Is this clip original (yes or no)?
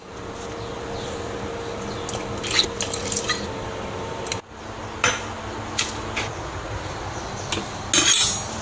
yes